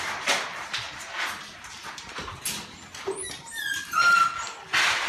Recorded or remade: recorded